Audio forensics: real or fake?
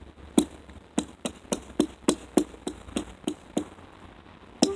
real